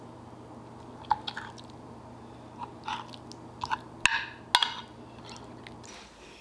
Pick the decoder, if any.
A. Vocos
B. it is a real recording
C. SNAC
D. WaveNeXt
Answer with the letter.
B